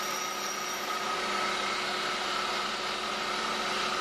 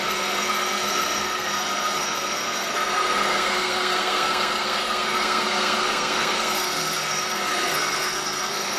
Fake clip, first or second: second